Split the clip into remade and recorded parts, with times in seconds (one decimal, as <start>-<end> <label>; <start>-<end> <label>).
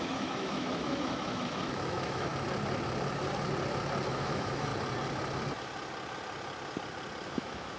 0.0-2.3 remade; 2.3-4.1 recorded; 4.1-4.7 remade; 4.7-7.3 recorded; 7.3-7.8 remade